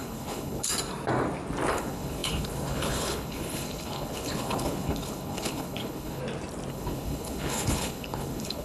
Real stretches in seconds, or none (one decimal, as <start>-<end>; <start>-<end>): 0.7-1.7; 6.2-6.7